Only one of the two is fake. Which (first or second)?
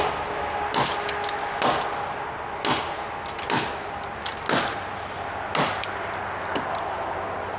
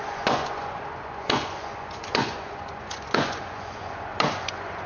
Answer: second